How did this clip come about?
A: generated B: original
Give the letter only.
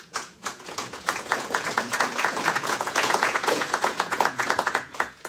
A